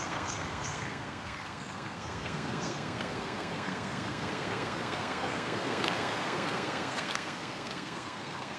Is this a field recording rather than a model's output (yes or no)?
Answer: no